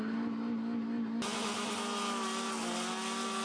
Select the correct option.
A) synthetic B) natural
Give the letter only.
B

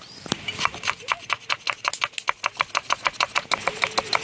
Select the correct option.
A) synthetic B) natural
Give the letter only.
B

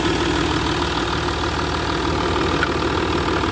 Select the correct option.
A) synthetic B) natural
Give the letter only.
B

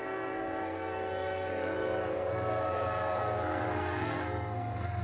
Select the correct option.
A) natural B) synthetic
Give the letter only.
B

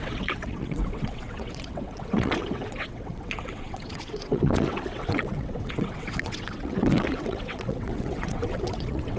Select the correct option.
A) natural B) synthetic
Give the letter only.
B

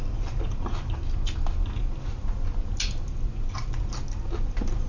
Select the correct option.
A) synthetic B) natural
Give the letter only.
B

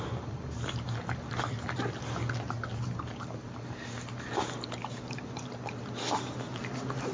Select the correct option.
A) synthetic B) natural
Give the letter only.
B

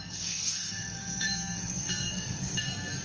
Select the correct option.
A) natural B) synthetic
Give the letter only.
B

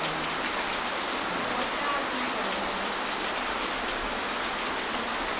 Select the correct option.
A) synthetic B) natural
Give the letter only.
B